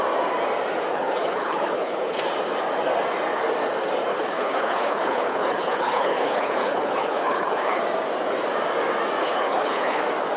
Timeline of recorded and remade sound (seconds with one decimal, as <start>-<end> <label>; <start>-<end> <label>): 0.0-0.9 recorded; 0.9-2.2 remade; 2.2-4.1 recorded; 4.1-7.8 remade; 7.8-9.2 recorded; 9.2-10.0 remade; 10.0-10.4 recorded